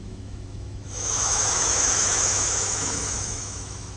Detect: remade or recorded remade